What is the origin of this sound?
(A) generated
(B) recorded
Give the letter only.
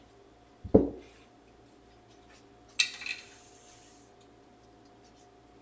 B